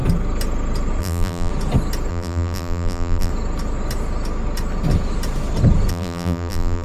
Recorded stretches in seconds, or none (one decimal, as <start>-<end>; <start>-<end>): 0.0-1.0; 1.5-2.1; 3.3-5.9